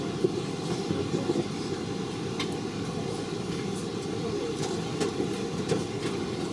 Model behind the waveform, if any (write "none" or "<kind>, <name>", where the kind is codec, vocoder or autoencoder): none